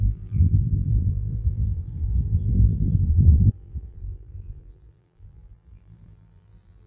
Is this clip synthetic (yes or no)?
yes